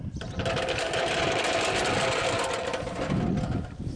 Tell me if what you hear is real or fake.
real